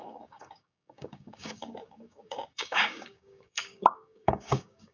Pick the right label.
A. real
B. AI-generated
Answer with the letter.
B